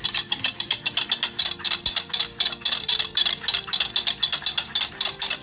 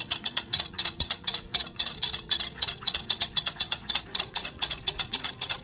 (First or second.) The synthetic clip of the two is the second